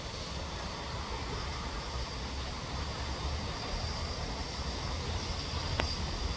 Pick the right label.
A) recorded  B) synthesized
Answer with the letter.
A